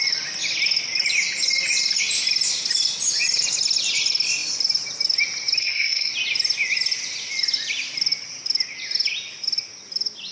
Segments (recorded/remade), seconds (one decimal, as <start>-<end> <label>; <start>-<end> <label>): 0.0-5.6 recorded; 5.6-6.1 remade; 6.1-10.3 recorded